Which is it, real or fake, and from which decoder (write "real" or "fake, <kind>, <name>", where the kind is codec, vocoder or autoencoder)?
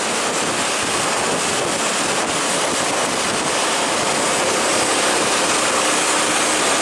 real